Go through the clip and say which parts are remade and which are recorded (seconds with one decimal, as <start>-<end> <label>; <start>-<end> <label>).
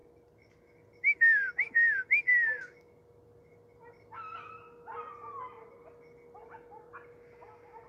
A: 0.0-7.9 recorded